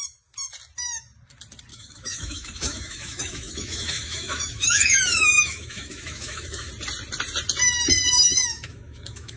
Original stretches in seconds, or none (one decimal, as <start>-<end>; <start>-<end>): 0.0-1.7; 6.7-8.2